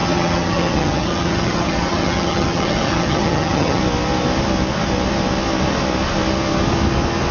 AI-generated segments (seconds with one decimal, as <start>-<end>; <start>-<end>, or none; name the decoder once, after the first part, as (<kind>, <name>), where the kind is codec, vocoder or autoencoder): 0.0-3.8 (vocoder, HiFi-GAN)